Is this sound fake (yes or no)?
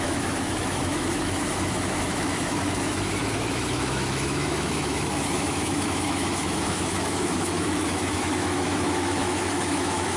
yes